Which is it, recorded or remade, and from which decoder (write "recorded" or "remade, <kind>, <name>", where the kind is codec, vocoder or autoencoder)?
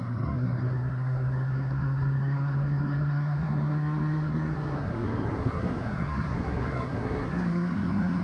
remade, codec, SNAC